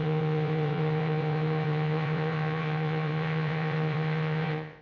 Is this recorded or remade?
remade